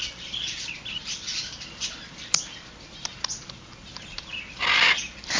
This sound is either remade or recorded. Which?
recorded